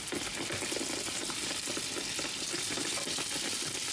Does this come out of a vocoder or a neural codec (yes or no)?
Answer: no